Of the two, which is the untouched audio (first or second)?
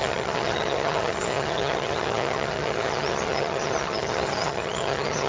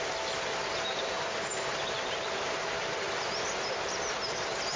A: second